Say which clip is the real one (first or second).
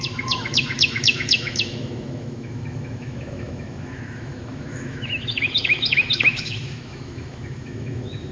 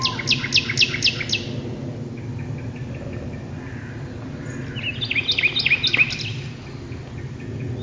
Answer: second